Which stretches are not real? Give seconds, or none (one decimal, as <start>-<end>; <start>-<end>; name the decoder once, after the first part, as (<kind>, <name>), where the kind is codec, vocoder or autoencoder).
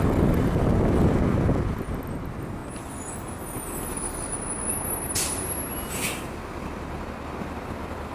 none